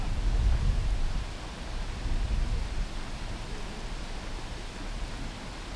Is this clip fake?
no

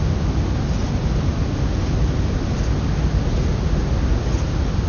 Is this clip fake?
no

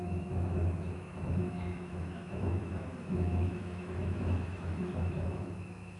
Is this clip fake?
yes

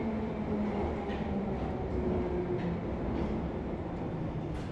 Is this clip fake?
no